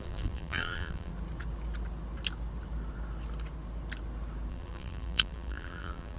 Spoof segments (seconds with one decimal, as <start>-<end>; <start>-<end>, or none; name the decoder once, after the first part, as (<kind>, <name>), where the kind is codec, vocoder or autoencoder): 0.0-1.1 (vocoder, BigVGAN v2); 4.5-6.2